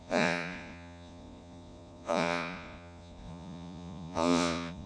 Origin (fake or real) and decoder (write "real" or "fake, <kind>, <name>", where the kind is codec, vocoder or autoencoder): fake, vocoder, Vocos